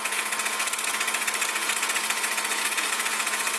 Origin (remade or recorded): remade